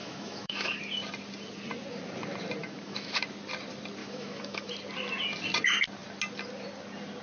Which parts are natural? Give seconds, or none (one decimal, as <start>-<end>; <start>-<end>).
0.8-2.6; 3.2-4.0; 4.7-7.2